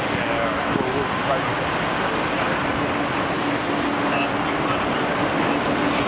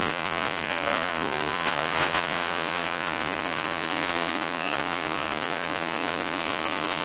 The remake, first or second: second